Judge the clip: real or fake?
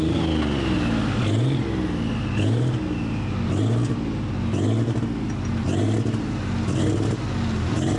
real